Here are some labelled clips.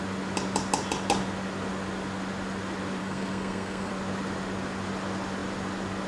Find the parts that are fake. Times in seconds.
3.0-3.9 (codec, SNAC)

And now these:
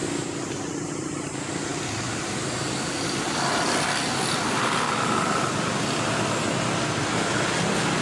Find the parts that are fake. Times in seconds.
none

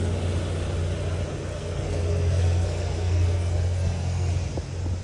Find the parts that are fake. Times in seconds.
1.5-4.3 (codec, SNAC)

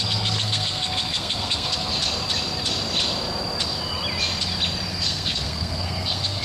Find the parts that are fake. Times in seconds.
0.0-1.9 (codec, SNAC); 4.9-6.4

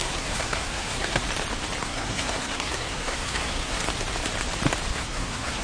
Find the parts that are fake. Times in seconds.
0.0-1.2 (codec, SNAC); 1.8-3.8; 4.9-5.6

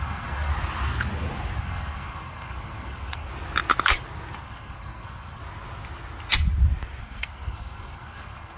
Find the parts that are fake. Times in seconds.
0.0-0.5 (codec, SNAC); 1.6-3.3; 4.4-5.4; 7.0-8.6

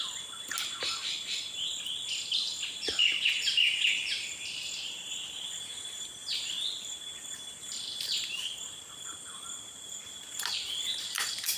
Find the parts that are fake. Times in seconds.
none

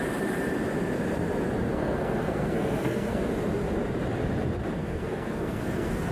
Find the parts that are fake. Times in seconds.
1.7-3.3 (codec, SNAC); 4.8-6.1